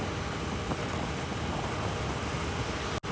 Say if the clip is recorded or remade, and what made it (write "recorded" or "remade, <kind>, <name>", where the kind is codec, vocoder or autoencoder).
recorded